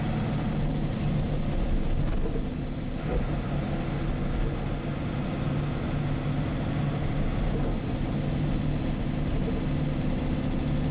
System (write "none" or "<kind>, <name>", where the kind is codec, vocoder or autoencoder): none